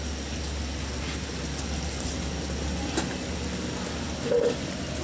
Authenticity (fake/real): real